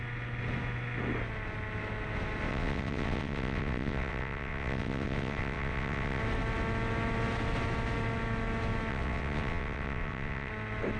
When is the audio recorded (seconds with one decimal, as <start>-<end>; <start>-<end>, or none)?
0.0-2.5; 6.2-8.9; 10.5-11.0